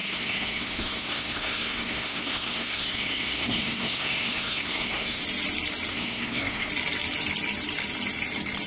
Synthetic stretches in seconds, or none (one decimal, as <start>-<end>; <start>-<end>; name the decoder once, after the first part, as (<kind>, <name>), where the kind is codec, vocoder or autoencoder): 0.0-5.2 (codec, SNAC); 5.9-6.7